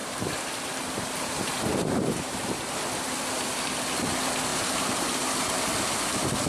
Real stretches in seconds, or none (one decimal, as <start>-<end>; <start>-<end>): 2.8-4.5; 5.2-6.5